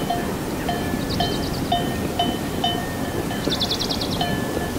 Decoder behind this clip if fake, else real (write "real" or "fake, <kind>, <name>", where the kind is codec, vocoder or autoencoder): real